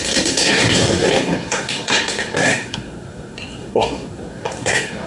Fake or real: fake